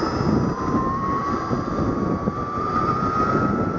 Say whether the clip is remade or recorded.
recorded